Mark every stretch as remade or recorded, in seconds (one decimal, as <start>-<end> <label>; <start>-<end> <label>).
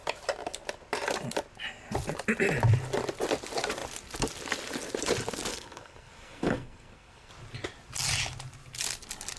0.0-5.5 recorded; 5.5-7.3 remade; 7.3-9.4 recorded